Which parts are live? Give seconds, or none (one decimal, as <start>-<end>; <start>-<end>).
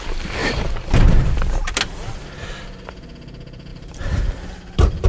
0.0-0.4; 1.6-3.7